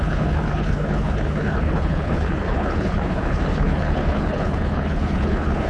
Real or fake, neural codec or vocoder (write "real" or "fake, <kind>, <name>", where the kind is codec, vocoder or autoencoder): fake, codec, HILCodec